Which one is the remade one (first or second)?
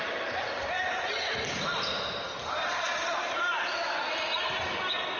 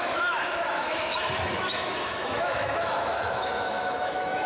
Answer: second